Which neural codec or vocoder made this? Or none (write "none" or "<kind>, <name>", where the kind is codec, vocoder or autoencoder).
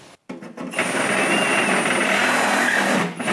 none